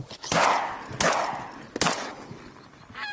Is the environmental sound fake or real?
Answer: real